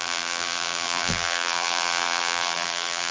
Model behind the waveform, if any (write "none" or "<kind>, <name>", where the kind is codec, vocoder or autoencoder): vocoder, BigVGAN v2